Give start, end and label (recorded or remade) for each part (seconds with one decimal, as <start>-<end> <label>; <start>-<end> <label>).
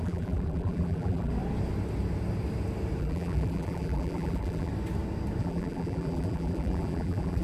0.0-1.3 remade; 1.3-3.0 recorded; 3.0-4.7 remade; 4.7-5.4 recorded; 5.4-7.4 remade